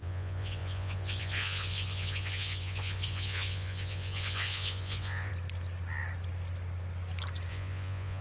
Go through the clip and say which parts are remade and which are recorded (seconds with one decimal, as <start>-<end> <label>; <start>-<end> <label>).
0.0-5.3 remade; 5.3-7.5 recorded; 7.5-8.2 remade